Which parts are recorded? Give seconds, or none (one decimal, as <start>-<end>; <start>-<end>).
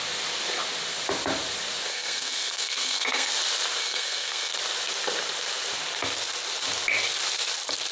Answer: 0.0-1.9; 3.3-3.8; 4.5-7.9